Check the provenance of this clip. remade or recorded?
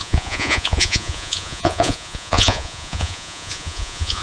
remade